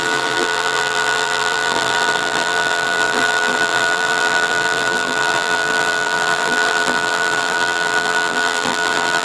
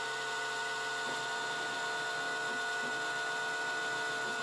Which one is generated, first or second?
first